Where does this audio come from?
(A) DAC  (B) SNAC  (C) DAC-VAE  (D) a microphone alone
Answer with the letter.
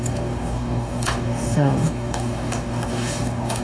A